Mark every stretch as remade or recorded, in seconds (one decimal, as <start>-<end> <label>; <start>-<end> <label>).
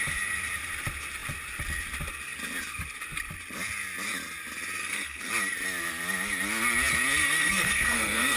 0.0-4.8 recorded; 4.8-5.3 remade; 5.3-7.2 recorded; 7.2-8.4 remade